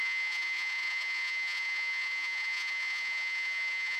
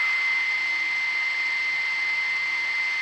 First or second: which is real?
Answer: second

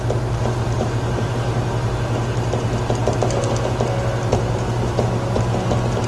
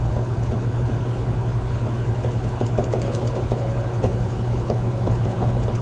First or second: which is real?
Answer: first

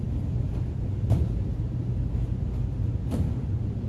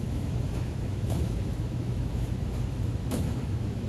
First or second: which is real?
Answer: first